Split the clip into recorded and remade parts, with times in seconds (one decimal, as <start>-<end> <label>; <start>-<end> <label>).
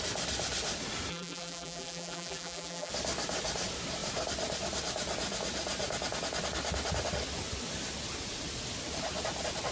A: 0.0-1.1 recorded; 1.1-2.9 remade; 2.9-9.7 recorded